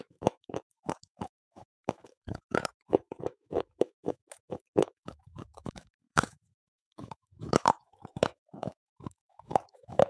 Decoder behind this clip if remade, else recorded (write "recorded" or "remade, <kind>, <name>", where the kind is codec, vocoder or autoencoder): remade, autoencoder, DAC-VAE